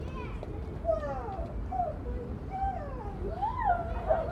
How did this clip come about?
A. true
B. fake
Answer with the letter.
A